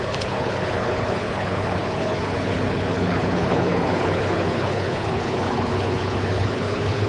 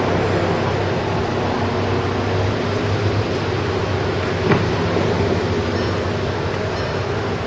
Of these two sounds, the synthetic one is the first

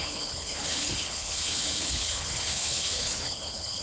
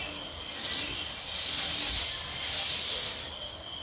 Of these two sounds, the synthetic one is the first